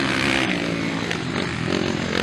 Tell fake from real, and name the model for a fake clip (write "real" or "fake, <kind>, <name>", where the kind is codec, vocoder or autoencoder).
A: real